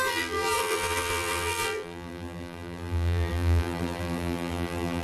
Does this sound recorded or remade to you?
remade